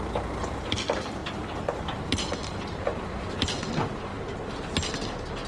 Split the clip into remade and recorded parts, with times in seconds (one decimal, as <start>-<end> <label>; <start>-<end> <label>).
0.0-5.5 recorded